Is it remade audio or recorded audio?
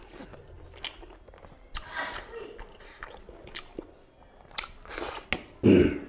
recorded